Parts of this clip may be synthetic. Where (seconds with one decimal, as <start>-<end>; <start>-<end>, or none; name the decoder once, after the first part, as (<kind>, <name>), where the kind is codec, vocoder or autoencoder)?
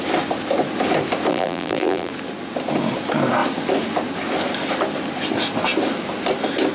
1.3-2.1 (vocoder, BigVGAN v2)